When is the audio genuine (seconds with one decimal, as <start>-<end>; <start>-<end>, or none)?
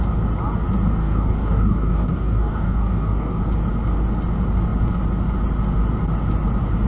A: 0.0-1.0; 3.4-6.9